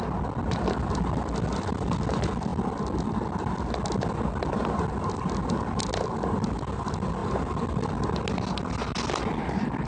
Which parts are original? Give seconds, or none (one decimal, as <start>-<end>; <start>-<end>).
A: 0.0-9.9

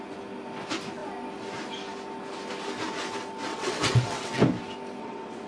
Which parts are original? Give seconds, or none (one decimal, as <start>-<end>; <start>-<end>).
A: 0.0-3.5; 4.4-5.0

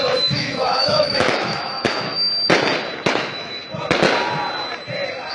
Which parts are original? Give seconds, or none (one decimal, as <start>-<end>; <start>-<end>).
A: 2.3-3.1; 3.6-5.3

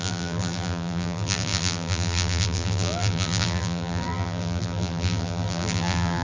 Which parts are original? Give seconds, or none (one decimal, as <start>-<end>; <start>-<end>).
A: none

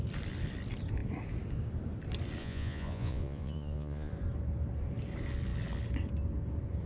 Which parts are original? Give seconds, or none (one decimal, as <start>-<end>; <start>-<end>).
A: 0.0-2.4; 4.1-6.9

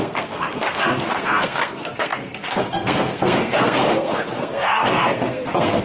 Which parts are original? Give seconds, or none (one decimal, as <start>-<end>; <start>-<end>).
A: none

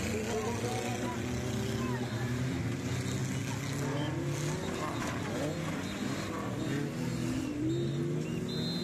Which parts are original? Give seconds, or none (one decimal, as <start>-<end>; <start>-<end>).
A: 0.0-8.8

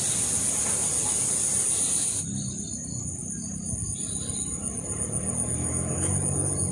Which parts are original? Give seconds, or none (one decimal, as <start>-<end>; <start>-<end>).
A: 0.0-5.6; 6.1-6.7